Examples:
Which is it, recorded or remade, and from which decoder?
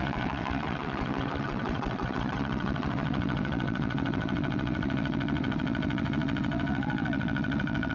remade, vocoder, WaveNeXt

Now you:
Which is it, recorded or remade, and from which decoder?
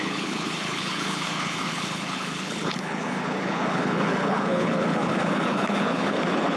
remade, codec, HILCodec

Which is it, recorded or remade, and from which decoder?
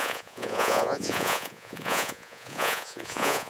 remade, vocoder, Vocos